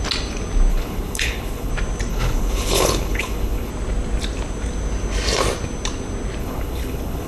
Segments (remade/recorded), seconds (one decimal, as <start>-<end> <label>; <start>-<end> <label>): 0.0-0.7 recorded; 0.7-1.7 remade; 1.7-2.1 recorded; 2.1-3.7 remade; 3.7-6.4 recorded; 6.4-7.3 remade